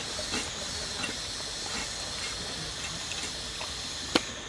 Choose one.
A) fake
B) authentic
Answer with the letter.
B